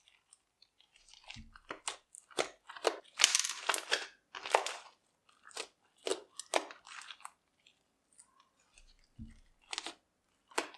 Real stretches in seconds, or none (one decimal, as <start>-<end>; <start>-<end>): 0.0-10.8